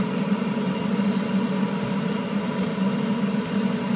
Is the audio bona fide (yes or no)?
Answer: yes